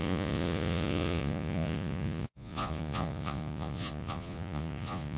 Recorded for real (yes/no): no